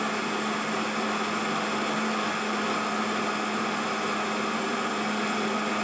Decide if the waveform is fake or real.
real